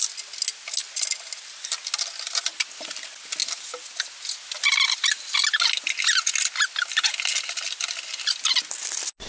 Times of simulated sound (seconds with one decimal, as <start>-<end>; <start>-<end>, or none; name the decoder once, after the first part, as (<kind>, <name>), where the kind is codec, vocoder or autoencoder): none

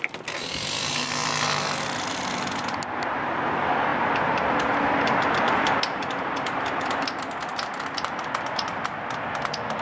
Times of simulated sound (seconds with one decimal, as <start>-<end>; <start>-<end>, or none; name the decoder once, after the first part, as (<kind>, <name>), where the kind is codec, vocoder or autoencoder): none

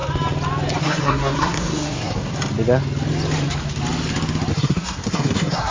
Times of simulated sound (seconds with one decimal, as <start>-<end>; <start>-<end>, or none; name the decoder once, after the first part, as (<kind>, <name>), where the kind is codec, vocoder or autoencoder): 0.8-2.3 (codec, SNAC); 4.5-5.7